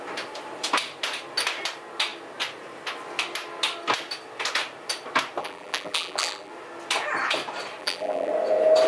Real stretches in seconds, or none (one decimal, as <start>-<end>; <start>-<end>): 0.0-5.4; 6.5-7.8; 8.3-8.9